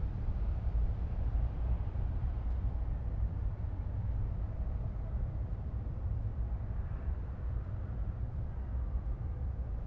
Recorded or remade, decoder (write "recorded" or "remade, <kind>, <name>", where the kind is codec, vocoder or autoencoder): remade, vocoder, BigVGAN v2